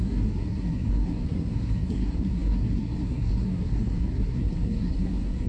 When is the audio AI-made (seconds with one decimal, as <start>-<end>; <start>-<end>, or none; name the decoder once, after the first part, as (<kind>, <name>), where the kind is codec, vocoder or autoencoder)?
0.0-5.5 (codec, SNAC)